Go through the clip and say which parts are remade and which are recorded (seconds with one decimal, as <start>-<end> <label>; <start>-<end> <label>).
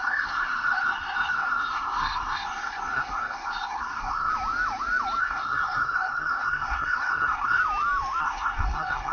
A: 0.0-4.3 remade; 4.3-5.2 recorded; 5.2-7.6 remade; 7.6-8.2 recorded; 8.2-9.1 remade